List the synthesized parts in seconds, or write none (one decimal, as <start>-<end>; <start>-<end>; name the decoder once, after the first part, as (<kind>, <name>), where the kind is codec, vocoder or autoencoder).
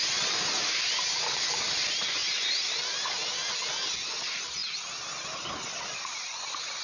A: none